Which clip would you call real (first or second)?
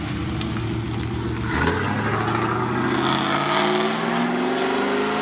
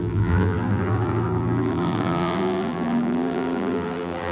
first